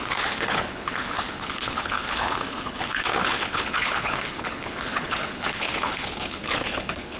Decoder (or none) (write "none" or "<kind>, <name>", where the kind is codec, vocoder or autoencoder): codec, HILCodec